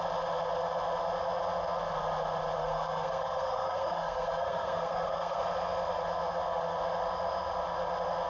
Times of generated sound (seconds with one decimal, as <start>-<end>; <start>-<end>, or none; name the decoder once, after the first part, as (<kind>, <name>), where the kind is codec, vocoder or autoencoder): 2.6-5.4 (codec, SNAC)